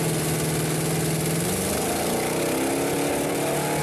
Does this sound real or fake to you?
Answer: real